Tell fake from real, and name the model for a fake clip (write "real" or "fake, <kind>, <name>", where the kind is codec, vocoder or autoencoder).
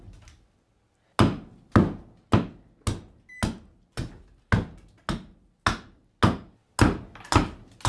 real